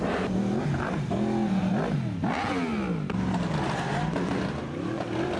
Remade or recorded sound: recorded